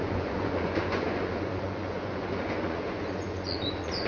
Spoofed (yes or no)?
yes